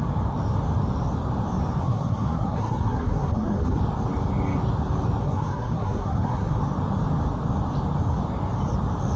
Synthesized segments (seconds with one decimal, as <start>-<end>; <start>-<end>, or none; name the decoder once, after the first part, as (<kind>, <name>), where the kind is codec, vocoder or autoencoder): 1.8-3.8 (codec, SNAC); 5.2-6.6